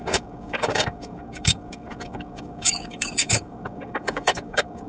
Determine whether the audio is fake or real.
fake